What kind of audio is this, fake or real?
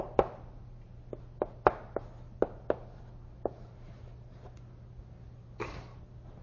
real